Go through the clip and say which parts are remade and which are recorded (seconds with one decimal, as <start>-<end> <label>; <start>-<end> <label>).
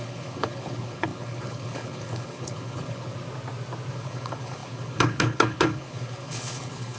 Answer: 0.0-3.1 remade; 3.1-3.9 recorded; 3.9-7.0 remade